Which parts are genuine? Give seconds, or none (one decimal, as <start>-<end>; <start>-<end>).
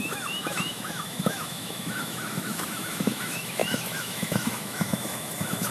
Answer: none